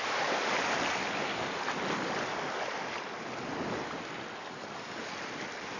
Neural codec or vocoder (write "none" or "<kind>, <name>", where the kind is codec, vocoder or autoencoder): none